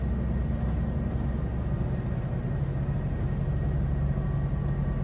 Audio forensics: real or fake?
real